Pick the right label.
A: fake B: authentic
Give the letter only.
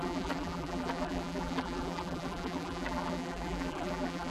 A